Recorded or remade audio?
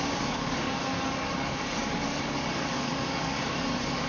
remade